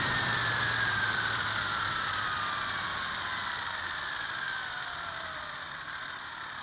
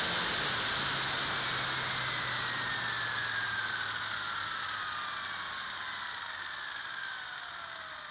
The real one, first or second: second